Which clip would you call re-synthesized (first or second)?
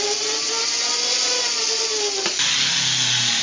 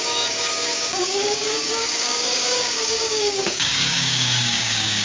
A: second